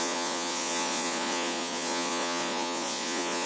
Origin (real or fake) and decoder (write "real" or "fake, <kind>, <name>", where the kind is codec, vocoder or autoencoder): fake, vocoder, Vocos